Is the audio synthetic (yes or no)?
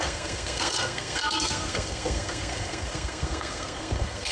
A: yes